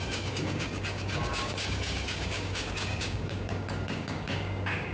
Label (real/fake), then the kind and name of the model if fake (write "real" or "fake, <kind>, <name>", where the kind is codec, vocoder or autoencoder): fake, codec, DAC